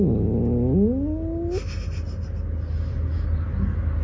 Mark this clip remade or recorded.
recorded